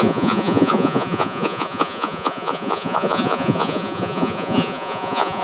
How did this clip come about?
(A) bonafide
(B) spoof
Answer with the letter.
B